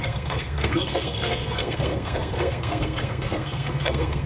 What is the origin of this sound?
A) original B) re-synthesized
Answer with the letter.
B